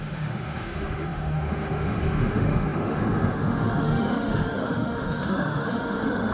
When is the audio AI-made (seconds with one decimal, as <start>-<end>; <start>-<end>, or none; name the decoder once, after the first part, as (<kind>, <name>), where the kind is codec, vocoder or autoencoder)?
0.0-6.3 (autoencoder, DAC-VAE)